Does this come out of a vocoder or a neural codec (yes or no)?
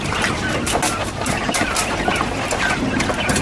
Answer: no